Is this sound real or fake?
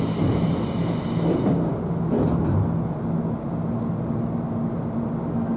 real